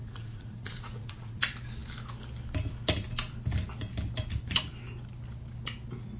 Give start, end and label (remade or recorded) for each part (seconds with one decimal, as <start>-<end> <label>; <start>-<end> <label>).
0.0-1.4 remade; 1.4-6.2 recorded